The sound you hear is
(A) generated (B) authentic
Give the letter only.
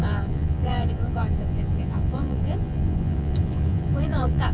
A